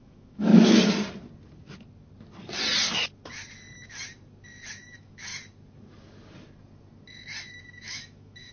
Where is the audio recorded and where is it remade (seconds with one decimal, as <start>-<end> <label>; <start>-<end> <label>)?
0.0-0.5 remade; 0.5-4.7 recorded; 4.7-5.3 remade; 5.3-7.6 recorded; 7.6-8.5 remade